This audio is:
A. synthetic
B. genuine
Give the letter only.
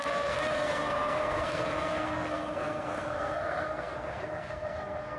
A